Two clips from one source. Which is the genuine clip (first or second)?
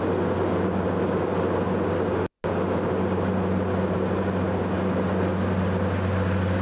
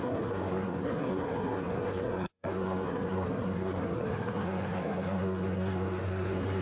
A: first